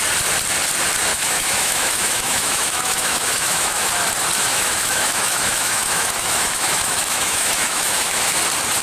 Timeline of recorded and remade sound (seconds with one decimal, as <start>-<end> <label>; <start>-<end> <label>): 0.0-1.1 recorded; 1.1-3.9 remade; 3.9-4.5 recorded; 4.5-8.3 remade; 8.3-8.8 recorded